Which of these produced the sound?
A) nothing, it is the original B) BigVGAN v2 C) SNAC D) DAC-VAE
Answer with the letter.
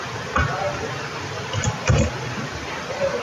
A